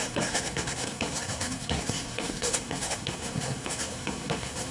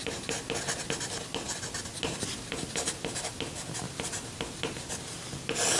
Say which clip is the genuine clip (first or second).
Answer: second